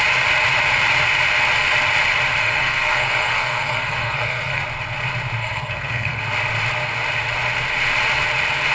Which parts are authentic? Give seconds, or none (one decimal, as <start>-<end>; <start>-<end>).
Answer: 0.0-2.4; 4.6-5.4; 6.2-8.7